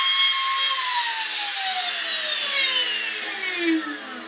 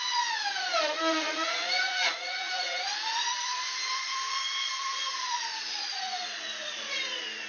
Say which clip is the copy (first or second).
second